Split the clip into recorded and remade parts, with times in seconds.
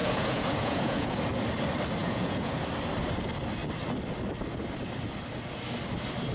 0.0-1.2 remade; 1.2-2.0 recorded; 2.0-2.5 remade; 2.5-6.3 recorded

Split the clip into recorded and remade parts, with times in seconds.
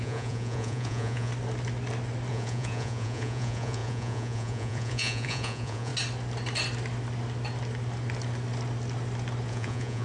0.0-1.3 remade; 1.3-2.3 recorded; 2.3-5.9 remade; 5.9-9.5 recorded; 9.5-10.0 remade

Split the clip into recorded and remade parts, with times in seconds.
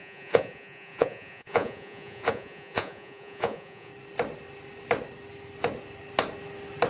0.0-3.9 remade; 3.9-6.9 recorded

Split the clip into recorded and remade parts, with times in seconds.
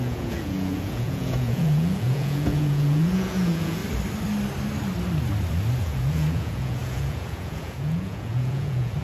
0.0-3.8 remade; 3.8-5.8 recorded; 5.8-9.0 remade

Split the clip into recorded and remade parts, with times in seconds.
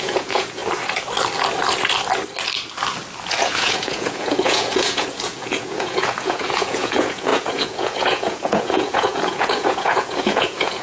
0.0-0.6 remade; 0.6-3.4 recorded; 3.4-10.8 remade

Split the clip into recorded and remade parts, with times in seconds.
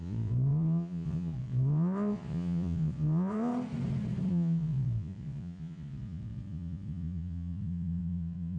0.0-3.5 remade; 3.5-4.3 recorded; 4.3-8.6 remade